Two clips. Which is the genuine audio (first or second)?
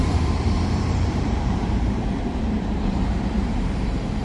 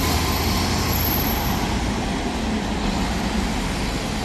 second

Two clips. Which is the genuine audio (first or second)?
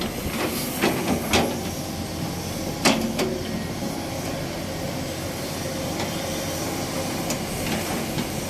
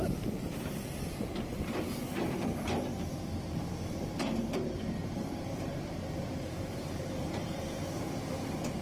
first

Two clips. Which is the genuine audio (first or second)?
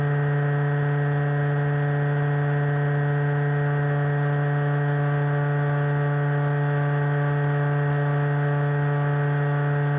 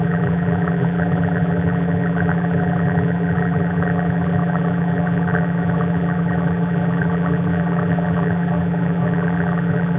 first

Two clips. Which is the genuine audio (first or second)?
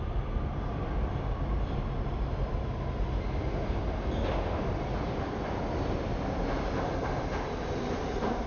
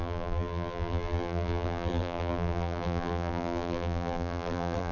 first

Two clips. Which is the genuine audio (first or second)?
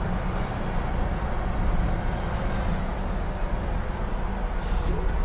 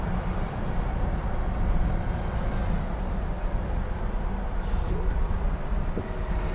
first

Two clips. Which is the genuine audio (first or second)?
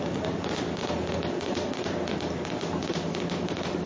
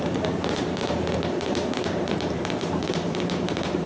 first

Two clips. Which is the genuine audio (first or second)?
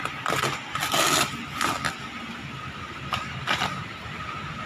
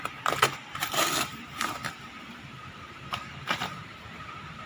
first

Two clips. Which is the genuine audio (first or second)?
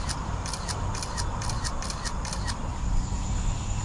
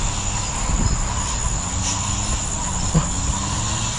second